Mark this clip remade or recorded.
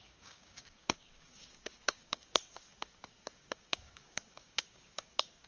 remade